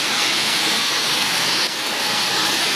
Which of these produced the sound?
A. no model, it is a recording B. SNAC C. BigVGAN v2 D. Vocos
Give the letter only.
B